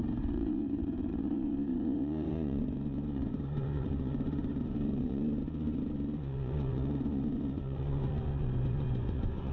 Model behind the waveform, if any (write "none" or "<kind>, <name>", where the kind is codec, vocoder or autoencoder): vocoder, Vocos